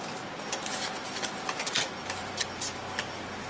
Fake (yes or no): no